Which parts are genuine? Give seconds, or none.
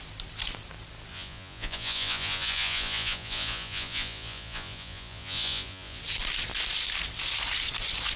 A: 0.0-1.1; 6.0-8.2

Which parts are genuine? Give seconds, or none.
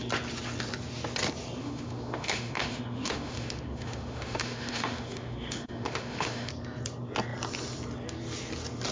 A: 0.0-1.6; 6.5-8.9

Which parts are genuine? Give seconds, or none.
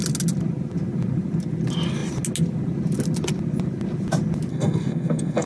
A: 0.0-4.5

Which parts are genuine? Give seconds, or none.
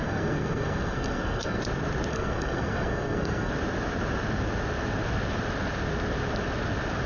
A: 1.6-2.1; 3.5-7.1